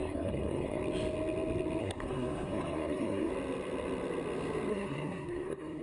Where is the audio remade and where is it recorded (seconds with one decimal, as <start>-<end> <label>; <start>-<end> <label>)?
0.0-0.8 remade; 0.8-1.8 recorded; 1.8-3.3 remade; 3.3-4.7 recorded; 4.7-5.8 remade